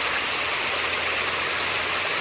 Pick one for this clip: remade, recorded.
recorded